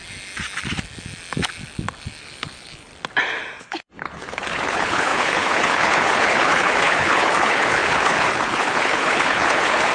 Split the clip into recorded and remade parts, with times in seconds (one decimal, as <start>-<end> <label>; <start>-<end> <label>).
0.0-2.2 recorded; 2.2-2.9 remade; 2.9-3.6 recorded; 3.6-9.9 remade